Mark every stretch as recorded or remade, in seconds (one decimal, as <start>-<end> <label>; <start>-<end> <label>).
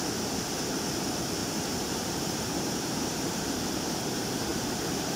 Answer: 0.0-1.4 recorded; 1.4-3.6 remade; 3.6-4.5 recorded; 4.5-5.2 remade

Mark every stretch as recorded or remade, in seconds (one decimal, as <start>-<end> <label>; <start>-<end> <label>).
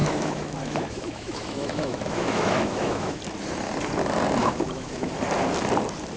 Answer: 0.0-3.2 remade; 3.2-4.4 recorded; 4.4-5.1 remade; 5.1-6.2 recorded